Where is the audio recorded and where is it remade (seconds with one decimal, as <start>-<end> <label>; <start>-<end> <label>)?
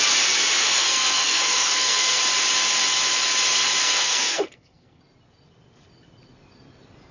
0.0-0.6 recorded; 0.6-2.2 remade; 2.2-3.8 recorded; 3.8-5.0 remade; 5.0-7.1 recorded